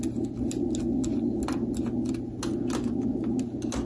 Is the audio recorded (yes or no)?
yes